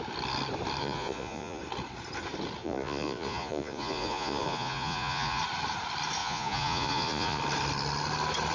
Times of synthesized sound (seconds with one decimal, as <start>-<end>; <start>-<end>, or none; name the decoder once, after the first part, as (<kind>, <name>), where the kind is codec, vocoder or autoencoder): 0.8-1.6 (vocoder, Vocos); 2.6-5.4; 6.2-7.4